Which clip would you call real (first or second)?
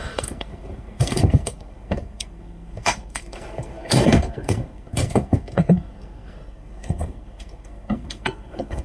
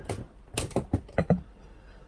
second